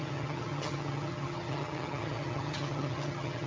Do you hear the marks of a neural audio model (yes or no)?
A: yes